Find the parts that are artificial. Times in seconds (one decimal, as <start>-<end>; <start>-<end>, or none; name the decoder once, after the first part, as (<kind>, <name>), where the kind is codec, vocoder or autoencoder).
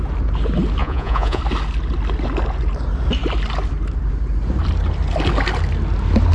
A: 0.8-1.4 (vocoder, Vocos)